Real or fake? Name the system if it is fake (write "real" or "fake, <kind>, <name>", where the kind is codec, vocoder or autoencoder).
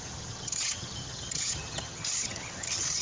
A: fake, vocoder, HiFi-GAN